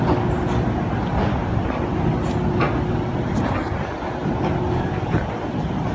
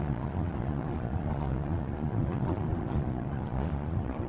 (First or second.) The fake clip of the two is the second